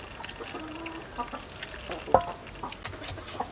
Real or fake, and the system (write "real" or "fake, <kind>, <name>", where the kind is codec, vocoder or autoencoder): real